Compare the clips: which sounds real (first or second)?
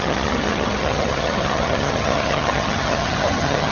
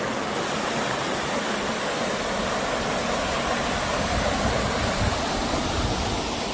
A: second